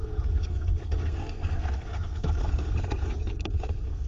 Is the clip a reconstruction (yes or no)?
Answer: yes